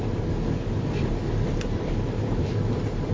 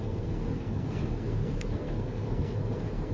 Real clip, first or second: first